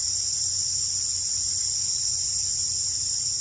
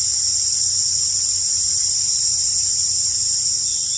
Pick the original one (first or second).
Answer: first